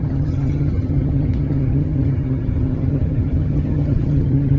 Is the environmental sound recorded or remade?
remade